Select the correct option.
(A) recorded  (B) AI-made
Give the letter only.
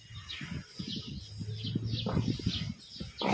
A